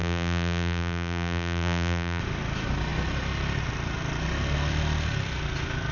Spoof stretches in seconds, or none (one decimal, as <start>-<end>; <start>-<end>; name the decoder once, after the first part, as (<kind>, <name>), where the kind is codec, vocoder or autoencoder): 0.0-2.2 (vocoder, BigVGAN v2)